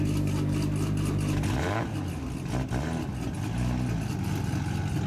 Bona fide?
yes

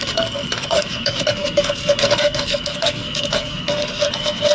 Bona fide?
no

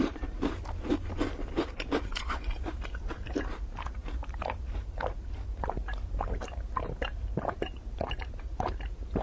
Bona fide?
no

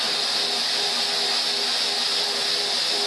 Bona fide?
yes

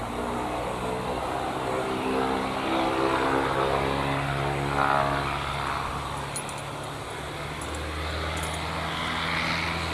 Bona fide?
yes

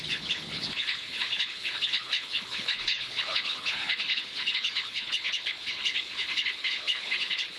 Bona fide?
no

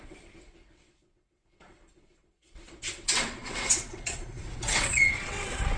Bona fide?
no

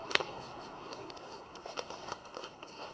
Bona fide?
no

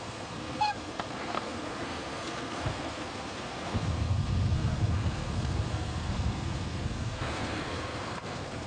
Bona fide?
no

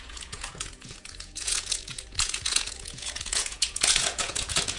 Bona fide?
no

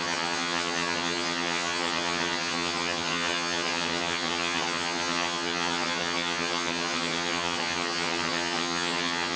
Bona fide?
no